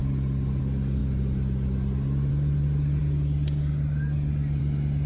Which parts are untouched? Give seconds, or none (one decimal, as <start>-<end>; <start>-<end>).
0.0-5.1